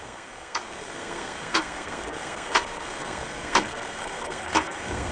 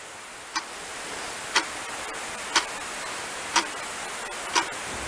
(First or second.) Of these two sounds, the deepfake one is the first